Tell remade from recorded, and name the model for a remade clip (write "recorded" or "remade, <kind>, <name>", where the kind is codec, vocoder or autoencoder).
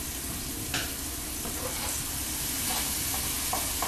recorded